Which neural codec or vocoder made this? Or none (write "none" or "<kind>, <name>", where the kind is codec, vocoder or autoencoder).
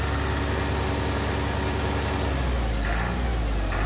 none